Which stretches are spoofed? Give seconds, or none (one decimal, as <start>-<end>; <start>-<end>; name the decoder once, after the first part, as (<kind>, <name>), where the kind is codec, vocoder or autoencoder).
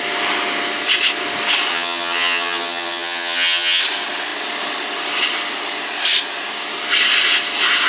1.7-3.8 (vocoder, HiFi-GAN)